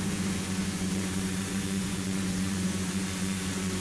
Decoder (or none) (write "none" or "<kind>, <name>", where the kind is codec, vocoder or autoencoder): vocoder, Vocos